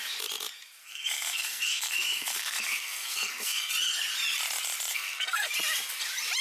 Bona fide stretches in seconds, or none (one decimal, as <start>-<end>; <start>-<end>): 0.0-0.8; 3.7-4.9; 5.5-6.4